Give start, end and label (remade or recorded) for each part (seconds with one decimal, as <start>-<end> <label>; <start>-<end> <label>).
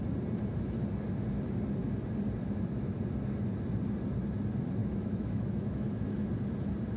0.0-4.8 recorded; 4.8-6.3 remade; 6.3-7.0 recorded